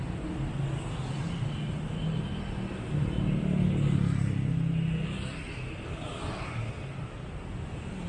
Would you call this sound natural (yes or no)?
yes